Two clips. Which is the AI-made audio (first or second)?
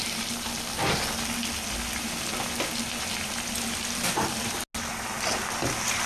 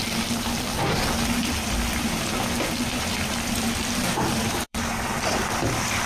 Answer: second